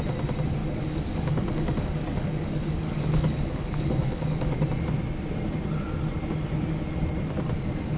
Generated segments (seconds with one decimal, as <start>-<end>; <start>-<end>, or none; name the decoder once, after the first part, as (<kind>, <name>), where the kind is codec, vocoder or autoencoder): 0.6-4.8 (codec, DAC)